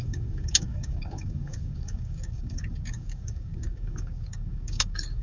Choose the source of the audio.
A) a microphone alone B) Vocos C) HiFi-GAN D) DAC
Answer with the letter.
D